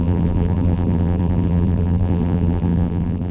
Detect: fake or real fake